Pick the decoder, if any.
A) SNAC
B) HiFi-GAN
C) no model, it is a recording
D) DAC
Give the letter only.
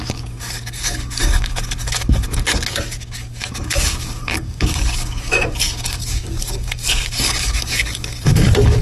D